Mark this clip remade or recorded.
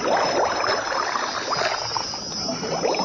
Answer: recorded